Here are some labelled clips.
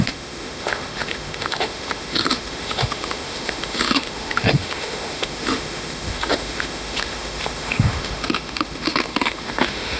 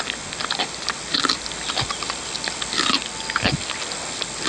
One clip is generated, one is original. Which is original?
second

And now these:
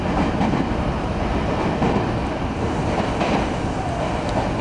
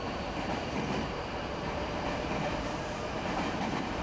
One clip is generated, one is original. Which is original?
first